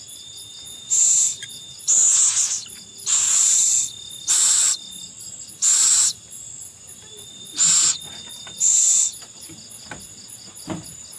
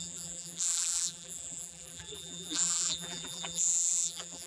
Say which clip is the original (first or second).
first